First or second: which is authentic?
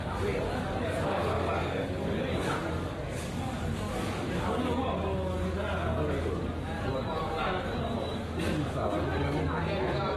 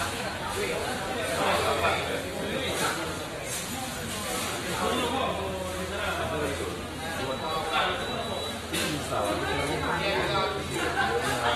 second